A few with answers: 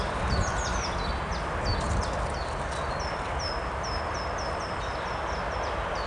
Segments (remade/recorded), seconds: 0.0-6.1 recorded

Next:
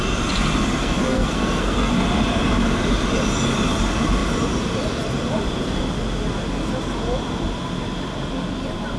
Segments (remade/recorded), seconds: 0.0-0.8 recorded; 0.8-1.9 remade; 1.9-9.0 recorded

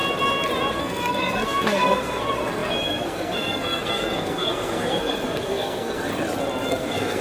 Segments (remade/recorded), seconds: 0.0-0.7 recorded; 0.7-6.1 remade; 6.1-6.7 recorded; 6.7-7.2 remade

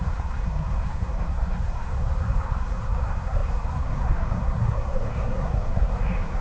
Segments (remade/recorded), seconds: 0.0-6.4 remade

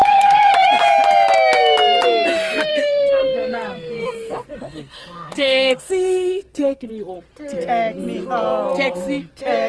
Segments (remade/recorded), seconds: 0.0-0.5 remade; 0.5-2.7 recorded; 2.7-6.9 remade; 6.9-9.7 recorded

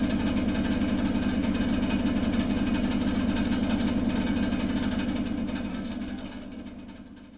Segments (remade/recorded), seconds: 0.0-5.7 recorded; 5.7-6.6 remade; 6.6-7.4 recorded